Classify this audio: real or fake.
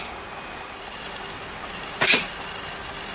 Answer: real